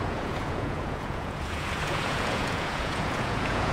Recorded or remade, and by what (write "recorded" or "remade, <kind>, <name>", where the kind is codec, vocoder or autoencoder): remade, vocoder, Vocos